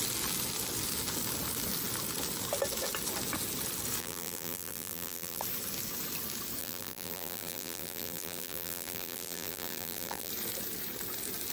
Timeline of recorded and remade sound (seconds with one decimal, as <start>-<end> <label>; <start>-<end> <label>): 0.0-4.0 recorded; 4.0-5.4 remade; 5.4-6.6 recorded; 6.6-10.3 remade; 10.3-11.5 recorded

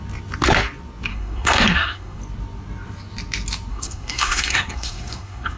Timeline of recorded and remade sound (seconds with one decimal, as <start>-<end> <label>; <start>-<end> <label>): 0.0-1.1 recorded; 1.1-2.2 remade; 2.2-3.7 recorded; 3.7-5.6 remade

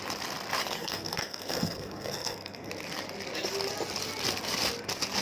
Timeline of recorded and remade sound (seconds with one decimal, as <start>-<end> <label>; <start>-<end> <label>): 0.0-0.8 recorded; 0.8-2.7 remade; 2.7-5.2 recorded